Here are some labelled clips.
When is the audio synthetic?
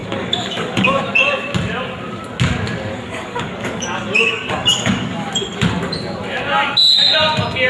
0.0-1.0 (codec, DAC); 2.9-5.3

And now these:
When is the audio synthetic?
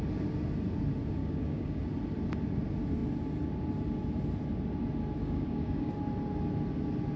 1.2-1.8 (codec, DAC); 5.2-5.9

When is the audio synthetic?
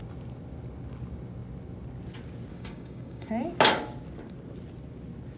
2.5-3.3 (codec, DAC)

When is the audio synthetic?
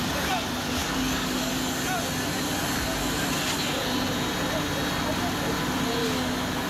0.8-1.5 (codec, DAC); 6.0-6.7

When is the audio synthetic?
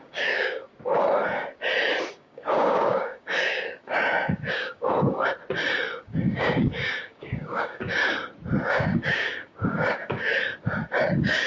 0.0-0.7 (codec, DAC); 2.1-5.3; 6.0-8.0; 8.7-10.3; 11.0-11.5